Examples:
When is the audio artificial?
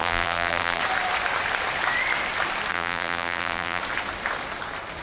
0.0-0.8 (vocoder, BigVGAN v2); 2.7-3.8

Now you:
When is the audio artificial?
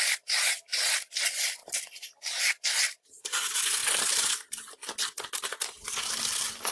0.0-1.6 (vocoder, BigVGAN v2); 2.4-6.7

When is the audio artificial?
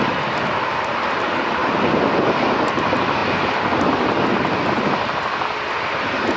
none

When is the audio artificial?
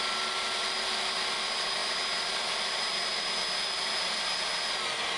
none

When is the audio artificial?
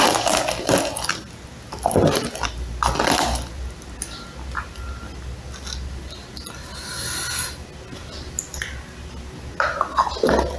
none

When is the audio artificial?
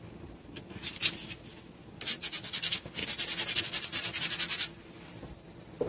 1.8-2.5 (vocoder, BigVGAN v2); 3.0-3.6